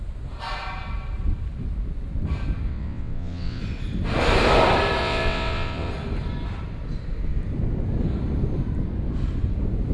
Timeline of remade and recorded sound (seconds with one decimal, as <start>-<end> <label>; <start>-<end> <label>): 0.0-2.7 recorded; 2.7-3.6 remade; 3.6-5.0 recorded; 5.0-5.9 remade; 5.9-9.9 recorded